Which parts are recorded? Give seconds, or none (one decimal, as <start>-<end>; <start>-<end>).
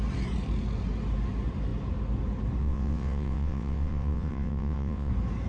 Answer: 0.0-2.6; 5.1-5.5